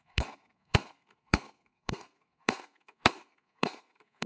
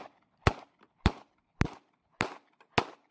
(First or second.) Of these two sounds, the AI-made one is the first